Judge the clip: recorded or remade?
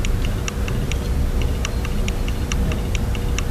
recorded